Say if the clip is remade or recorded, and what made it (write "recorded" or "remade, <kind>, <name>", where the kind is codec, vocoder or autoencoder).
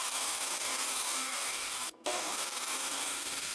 remade, codec, DAC